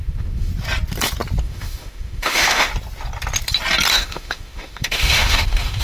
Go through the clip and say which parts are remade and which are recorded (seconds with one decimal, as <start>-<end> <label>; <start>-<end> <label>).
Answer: 0.0-0.5 remade; 0.5-1.4 recorded; 1.4-2.7 remade; 2.7-3.9 recorded; 3.9-5.8 remade